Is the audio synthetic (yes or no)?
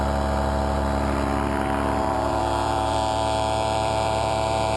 yes